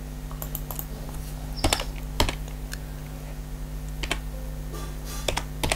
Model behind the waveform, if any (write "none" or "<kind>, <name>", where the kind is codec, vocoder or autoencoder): none